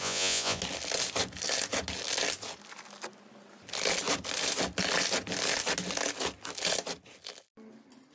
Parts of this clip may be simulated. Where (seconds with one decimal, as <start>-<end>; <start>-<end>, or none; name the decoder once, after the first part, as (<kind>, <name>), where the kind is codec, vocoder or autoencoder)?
0.0-0.6 (vocoder, Vocos)